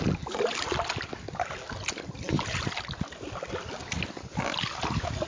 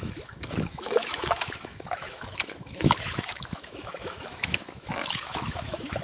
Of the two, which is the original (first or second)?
first